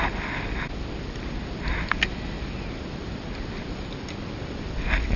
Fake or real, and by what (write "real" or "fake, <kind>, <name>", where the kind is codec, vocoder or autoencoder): real